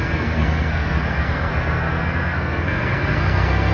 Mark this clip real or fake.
fake